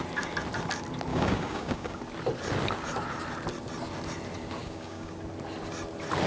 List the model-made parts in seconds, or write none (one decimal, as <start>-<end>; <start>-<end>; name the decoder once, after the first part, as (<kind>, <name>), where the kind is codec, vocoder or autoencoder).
1.1-2.0 (codec, DAC); 4.6-5.1